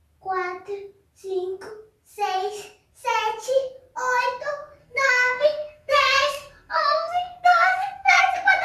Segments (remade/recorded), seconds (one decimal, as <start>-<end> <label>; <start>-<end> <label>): 0.0-4.8 recorded; 4.8-8.2 remade; 8.2-8.6 recorded

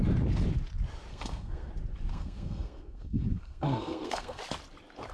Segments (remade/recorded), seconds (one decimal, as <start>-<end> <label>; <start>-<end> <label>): 0.0-1.1 recorded; 1.1-1.7 remade; 1.7-2.1 recorded; 2.1-4.4 remade; 4.4-5.1 recorded

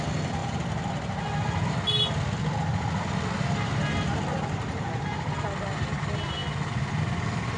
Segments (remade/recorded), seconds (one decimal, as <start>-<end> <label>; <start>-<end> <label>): 0.0-7.6 recorded

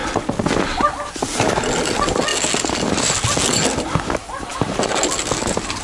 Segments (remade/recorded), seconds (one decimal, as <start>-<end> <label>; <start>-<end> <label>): 0.0-5.8 recorded

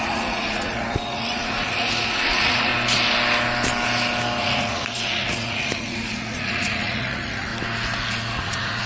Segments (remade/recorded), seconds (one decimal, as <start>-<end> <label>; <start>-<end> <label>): 0.0-2.7 remade; 2.7-4.4 recorded; 4.4-7.5 remade; 7.5-8.3 recorded; 8.3-8.9 remade

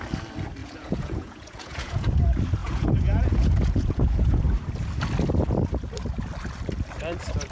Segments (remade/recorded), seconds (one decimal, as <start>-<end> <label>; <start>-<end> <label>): 0.0-0.6 recorded; 0.6-2.1 remade; 2.1-2.6 recorded; 2.6-4.4 remade; 4.4-7.5 recorded

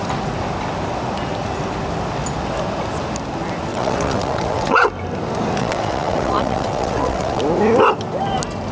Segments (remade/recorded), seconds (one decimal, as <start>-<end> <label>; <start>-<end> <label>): 0.0-3.7 recorded; 3.7-4.9 remade; 4.9-5.6 recorded; 5.6-7.4 remade; 7.4-8.7 recorded